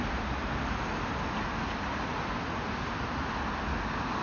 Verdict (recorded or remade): recorded